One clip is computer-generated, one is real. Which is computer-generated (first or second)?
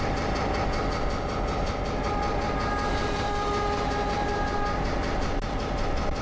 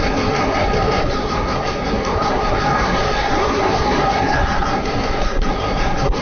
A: second